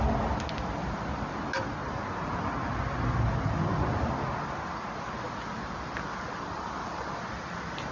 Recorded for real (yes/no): yes